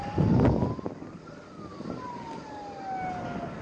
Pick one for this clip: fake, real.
real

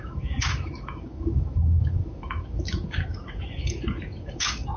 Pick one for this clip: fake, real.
fake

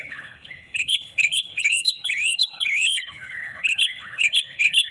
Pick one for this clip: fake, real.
fake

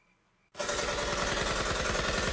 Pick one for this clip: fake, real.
real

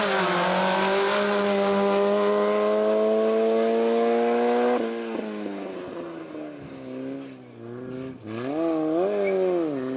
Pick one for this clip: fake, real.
real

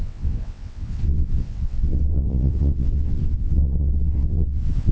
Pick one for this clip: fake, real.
fake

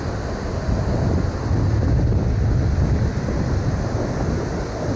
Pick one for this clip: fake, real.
real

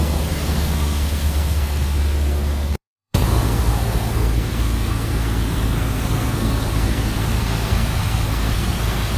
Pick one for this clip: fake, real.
fake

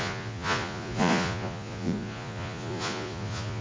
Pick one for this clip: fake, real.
fake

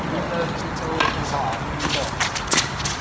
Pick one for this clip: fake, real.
real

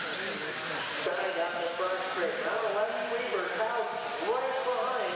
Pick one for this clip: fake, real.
real